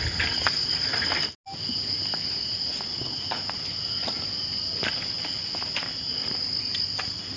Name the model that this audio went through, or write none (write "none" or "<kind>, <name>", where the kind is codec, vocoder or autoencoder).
none